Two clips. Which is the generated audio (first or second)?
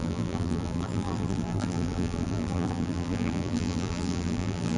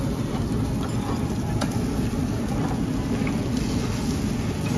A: first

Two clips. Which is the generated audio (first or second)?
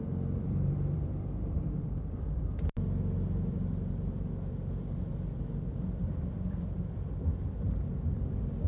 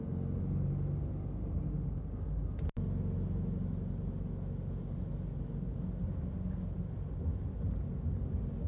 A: first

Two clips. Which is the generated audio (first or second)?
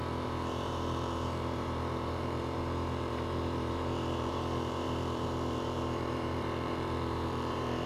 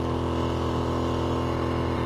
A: first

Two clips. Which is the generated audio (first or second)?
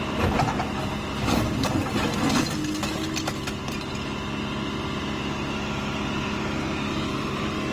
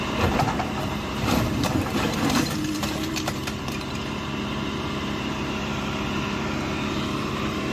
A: second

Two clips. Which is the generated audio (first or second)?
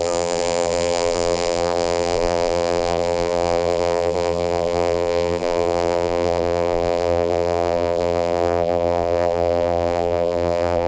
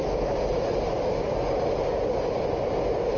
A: first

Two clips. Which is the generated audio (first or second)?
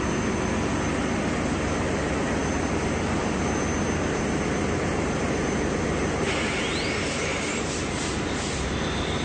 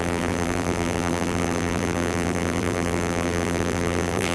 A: second